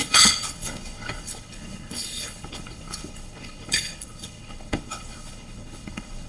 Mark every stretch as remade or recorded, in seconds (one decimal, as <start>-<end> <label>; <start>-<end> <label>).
0.0-6.3 remade